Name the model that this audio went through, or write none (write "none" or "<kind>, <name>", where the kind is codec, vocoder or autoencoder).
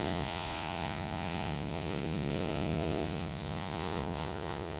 vocoder, Vocos